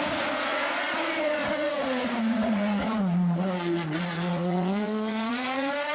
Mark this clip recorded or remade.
remade